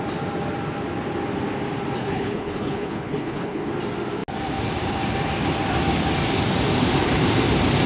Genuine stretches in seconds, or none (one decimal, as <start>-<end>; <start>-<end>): 0.0-2.0; 3.7-7.9